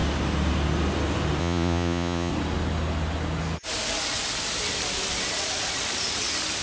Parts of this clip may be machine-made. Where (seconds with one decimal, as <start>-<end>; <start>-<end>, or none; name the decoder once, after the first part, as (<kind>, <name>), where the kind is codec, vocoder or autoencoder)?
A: 1.4-2.3 (vocoder, Vocos)

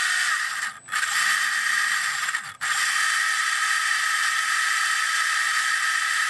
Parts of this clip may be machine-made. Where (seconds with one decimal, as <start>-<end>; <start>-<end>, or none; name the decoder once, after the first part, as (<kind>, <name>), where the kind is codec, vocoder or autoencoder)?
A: 3.9-4.4 (vocoder, BigVGAN v2)

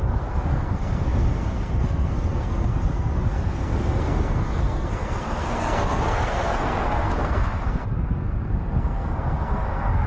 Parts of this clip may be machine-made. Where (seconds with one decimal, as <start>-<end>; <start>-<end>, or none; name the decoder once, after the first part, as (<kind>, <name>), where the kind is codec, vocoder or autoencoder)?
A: 0.0-10.1 (codec, SNAC)

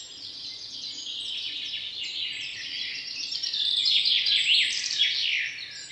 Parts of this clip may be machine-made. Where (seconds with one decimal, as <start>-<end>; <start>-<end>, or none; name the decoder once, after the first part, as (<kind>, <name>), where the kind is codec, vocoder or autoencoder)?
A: none

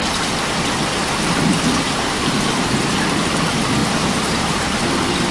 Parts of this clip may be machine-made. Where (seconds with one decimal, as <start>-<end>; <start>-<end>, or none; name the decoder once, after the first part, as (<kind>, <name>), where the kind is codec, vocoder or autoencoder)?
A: 3.8-4.7 (vocoder, BigVGAN v2)